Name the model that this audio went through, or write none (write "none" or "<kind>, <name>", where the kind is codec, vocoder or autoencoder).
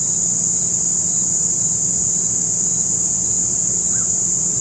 none